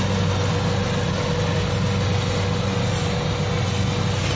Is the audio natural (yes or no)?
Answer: yes